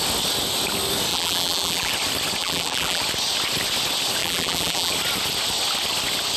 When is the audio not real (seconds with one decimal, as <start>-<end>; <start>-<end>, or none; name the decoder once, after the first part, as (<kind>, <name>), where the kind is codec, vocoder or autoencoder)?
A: 1.1-1.9 (vocoder, BigVGAN v2); 2.4-3.0; 4.2-4.9